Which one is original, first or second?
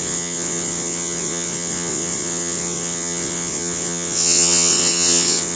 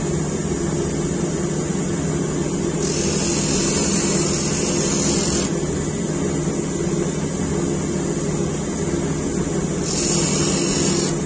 second